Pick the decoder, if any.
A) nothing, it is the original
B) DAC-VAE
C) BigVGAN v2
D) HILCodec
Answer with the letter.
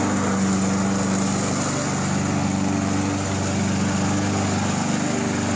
A